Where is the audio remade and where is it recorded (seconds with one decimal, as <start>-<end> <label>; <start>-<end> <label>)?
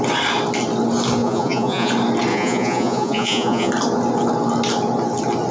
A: 0.0-1.2 recorded; 1.2-1.9 remade; 1.9-2.3 recorded; 2.3-3.7 remade; 3.7-5.5 recorded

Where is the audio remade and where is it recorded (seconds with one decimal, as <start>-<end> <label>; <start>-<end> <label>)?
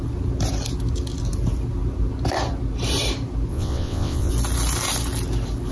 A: 0.0-3.5 recorded; 3.5-4.3 remade; 4.3-5.7 recorded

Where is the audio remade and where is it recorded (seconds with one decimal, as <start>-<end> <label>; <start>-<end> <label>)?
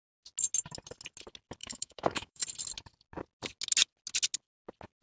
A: 0.0-1.6 recorded; 1.6-2.4 remade; 2.4-5.0 recorded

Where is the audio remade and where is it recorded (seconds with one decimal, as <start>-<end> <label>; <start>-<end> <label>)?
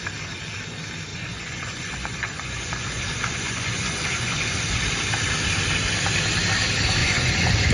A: 0.0-1.1 recorded; 1.1-4.8 remade; 4.8-7.0 recorded; 7.0-7.7 remade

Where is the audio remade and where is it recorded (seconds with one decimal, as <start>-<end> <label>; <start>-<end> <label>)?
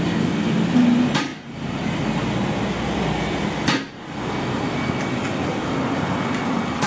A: 0.0-6.9 recorded